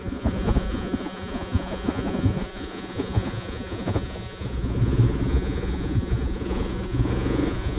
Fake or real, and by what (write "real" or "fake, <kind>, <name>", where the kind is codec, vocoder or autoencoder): fake, vocoder, Vocos